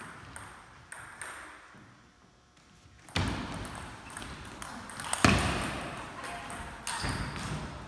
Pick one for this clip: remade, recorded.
recorded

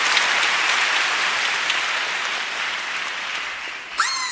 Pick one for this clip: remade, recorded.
recorded